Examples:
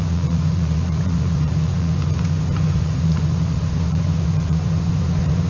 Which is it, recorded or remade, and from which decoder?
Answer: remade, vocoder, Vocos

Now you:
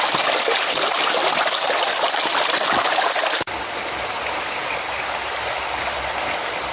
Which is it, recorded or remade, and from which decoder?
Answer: recorded